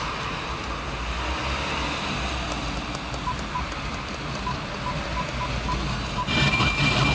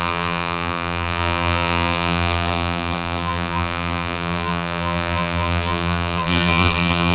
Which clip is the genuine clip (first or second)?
first